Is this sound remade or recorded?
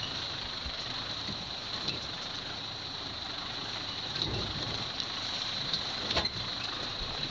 remade